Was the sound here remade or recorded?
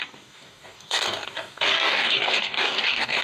remade